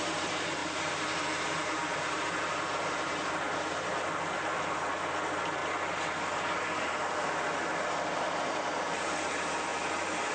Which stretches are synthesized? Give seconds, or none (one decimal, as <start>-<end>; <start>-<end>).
0.0-0.6; 2.3-5.6; 6.9-10.3